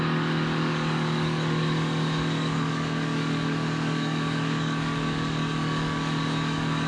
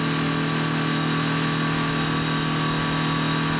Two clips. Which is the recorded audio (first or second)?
second